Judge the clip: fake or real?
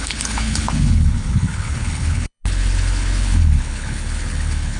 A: fake